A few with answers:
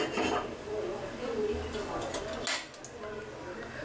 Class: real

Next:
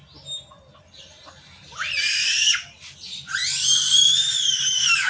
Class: real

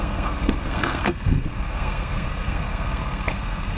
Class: fake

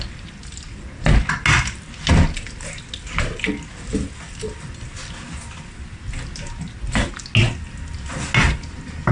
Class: real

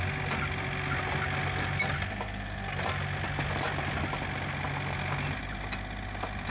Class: real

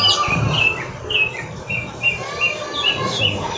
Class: real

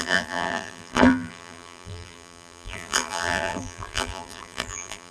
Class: fake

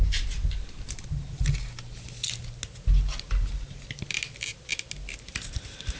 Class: real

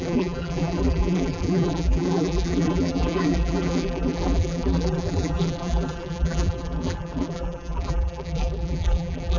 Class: fake